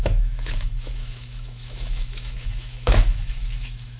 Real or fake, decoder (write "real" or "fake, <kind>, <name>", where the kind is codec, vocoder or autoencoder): fake, autoencoder, DAC-VAE